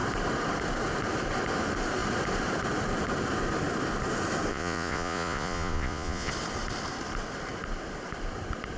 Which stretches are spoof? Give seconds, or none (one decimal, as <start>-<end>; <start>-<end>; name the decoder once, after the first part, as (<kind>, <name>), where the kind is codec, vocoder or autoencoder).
4.5-6.3 (vocoder, Vocos)